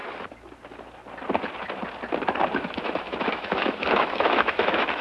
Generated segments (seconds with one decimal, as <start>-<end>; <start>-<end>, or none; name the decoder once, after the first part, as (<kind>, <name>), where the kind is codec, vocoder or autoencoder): 3.0-5.0 (autoencoder, DAC-VAE)